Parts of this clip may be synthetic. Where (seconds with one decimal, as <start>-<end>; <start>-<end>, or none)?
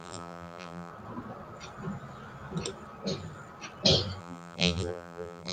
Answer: 0.0-0.9; 4.2-5.5